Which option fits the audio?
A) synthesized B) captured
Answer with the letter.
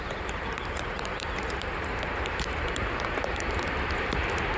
A